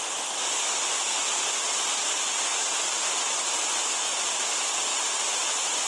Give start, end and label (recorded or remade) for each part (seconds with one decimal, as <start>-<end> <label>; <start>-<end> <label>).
0.0-5.9 recorded